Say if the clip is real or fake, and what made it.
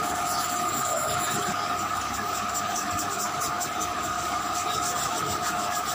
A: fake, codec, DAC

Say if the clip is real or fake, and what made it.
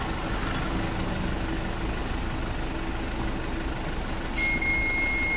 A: real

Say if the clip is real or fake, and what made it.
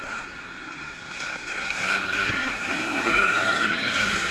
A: fake, codec, SNAC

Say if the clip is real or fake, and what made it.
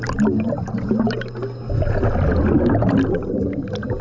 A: real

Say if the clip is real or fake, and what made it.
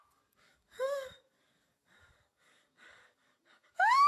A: fake, codec, DAC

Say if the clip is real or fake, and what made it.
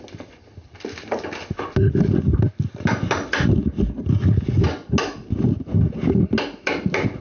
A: real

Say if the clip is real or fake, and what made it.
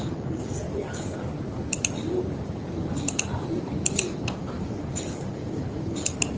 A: real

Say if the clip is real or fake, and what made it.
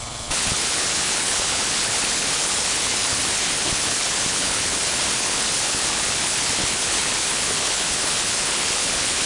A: fake, codec, HILCodec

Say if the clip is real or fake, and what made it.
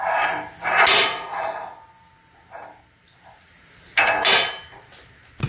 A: real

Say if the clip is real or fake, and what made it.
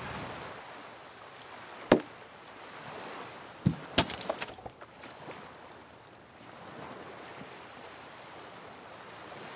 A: real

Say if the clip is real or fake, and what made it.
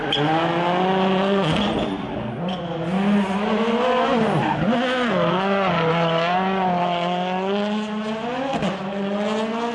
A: real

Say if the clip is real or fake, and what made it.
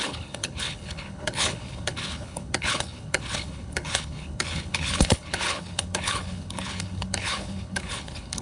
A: fake, codec, HILCodec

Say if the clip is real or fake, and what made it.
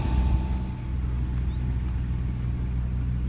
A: real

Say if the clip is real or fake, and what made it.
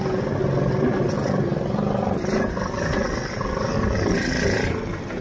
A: real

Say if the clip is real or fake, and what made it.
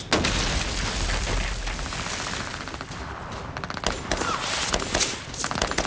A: real